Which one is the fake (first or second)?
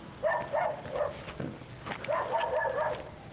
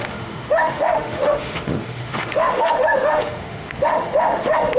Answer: second